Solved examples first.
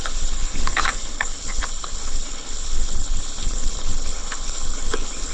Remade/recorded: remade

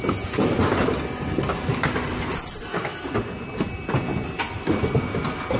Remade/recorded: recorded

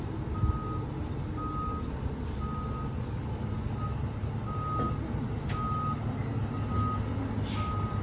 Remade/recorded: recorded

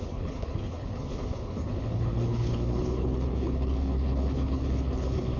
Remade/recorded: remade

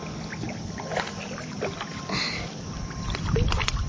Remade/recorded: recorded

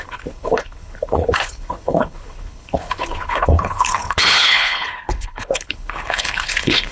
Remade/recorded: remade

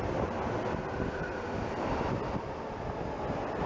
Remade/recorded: recorded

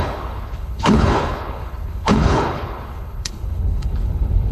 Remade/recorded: remade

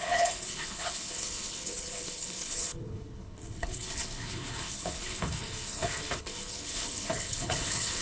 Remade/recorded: remade